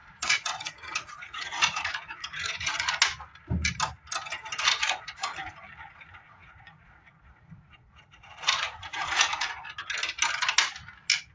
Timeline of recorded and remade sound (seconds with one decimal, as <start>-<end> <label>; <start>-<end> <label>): 0.0-3.0 remade; 3.0-4.8 recorded; 4.8-5.5 remade; 5.5-5.9 recorded; 5.9-9.5 remade; 9.5-11.3 recorded